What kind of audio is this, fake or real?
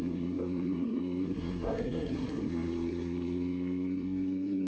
fake